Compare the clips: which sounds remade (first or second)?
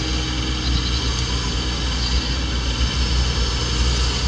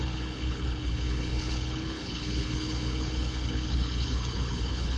second